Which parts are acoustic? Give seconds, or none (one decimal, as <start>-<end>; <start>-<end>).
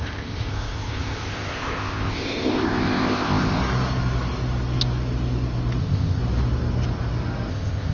3.6-5.8; 6.2-7.5